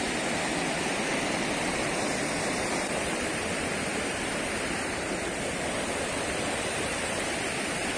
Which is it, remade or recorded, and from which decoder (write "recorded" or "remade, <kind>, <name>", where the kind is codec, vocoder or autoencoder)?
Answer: remade, vocoder, BigVGAN v2